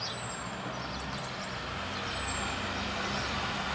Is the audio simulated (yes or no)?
no